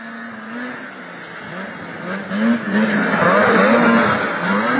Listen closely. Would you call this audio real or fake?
real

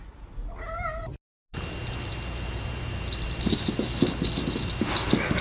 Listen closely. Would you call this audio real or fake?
real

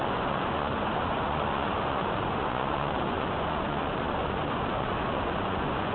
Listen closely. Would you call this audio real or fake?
fake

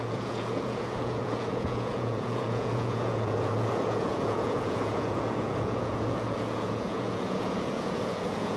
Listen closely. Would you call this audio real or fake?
fake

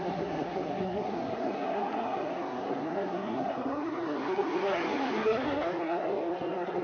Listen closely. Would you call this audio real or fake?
fake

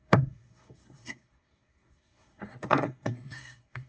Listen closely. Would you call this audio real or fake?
fake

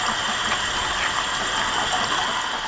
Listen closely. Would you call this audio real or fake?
real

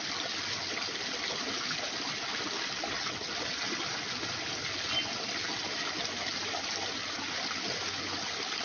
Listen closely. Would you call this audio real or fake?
real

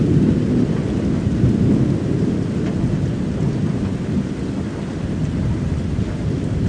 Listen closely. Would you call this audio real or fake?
real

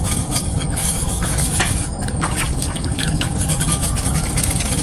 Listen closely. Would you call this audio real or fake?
fake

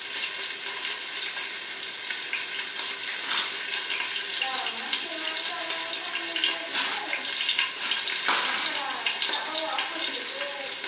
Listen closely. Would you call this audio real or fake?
real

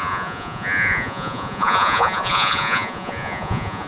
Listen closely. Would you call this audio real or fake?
fake